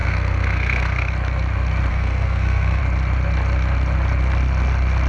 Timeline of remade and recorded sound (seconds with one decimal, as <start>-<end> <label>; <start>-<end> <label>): 0.0-1.1 remade; 1.1-1.9 recorded; 1.9-2.8 remade; 2.8-5.1 recorded